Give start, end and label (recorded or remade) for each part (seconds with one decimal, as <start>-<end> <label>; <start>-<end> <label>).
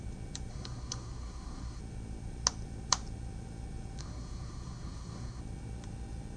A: 0.0-0.5 recorded; 0.5-1.8 remade; 1.8-4.0 recorded; 4.0-5.4 remade; 5.4-6.4 recorded